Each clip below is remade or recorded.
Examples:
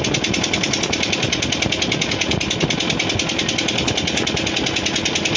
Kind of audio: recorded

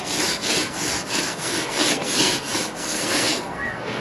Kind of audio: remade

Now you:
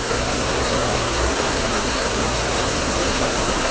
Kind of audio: remade